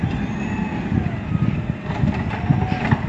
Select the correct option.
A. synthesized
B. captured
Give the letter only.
B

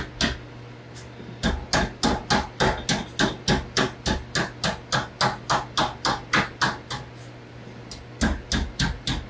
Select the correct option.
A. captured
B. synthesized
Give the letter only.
A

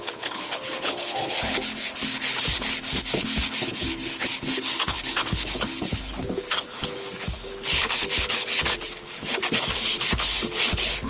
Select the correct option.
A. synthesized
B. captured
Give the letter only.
A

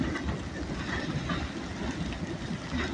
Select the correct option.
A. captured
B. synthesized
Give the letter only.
A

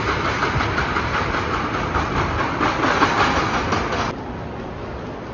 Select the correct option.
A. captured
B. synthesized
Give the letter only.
A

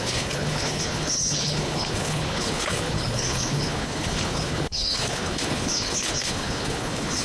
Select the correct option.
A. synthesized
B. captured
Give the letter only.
A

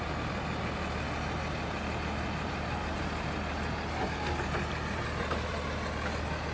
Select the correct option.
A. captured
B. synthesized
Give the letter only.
A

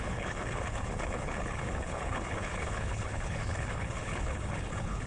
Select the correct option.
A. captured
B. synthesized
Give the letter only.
B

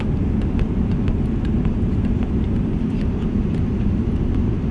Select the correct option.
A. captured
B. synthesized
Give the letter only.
A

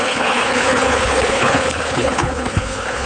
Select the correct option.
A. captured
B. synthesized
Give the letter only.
B